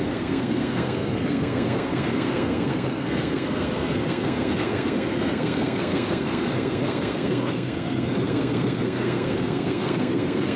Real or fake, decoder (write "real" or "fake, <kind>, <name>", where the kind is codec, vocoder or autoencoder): fake, codec, SNAC